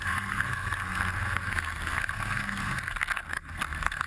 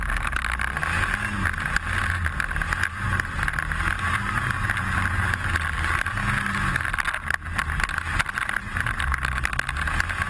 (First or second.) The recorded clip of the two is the second